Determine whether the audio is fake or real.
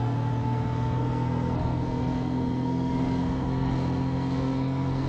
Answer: fake